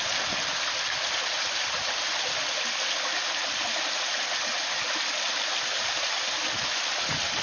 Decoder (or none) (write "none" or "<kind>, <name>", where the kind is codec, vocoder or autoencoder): none